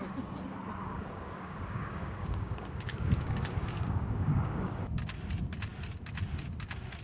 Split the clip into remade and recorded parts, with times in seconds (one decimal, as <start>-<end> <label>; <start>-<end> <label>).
0.0-0.8 recorded; 0.8-4.8 remade; 4.8-7.0 recorded